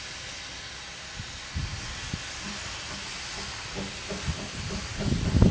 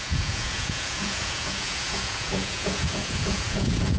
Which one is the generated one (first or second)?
second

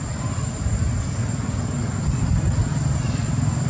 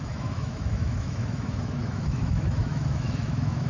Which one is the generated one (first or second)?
second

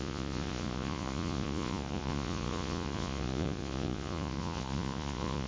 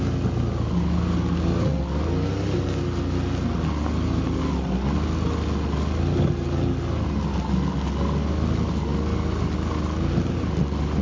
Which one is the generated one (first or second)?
first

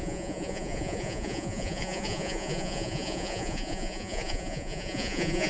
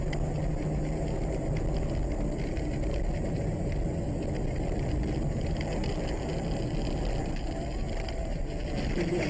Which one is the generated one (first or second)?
first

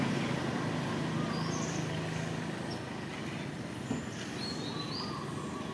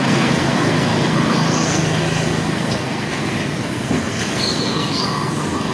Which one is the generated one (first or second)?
second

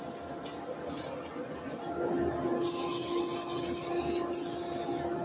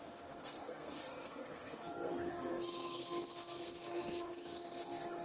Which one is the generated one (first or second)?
second